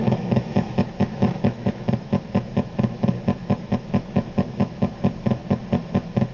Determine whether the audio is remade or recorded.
remade